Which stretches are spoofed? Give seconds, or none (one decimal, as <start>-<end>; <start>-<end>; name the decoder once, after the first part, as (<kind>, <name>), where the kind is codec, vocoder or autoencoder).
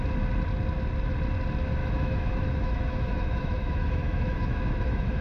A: 1.8-5.2 (autoencoder, DAC-VAE)